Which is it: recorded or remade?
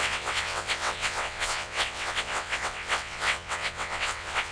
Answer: remade